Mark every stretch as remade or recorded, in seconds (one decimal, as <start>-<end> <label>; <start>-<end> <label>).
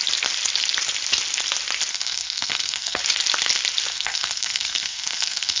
0.0-1.9 recorded; 1.9-3.0 remade; 3.0-3.9 recorded; 3.9-5.6 remade